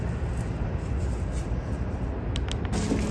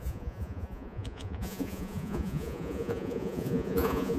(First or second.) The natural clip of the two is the first